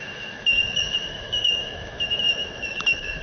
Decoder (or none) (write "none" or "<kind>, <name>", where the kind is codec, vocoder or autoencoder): autoencoder, DAC-VAE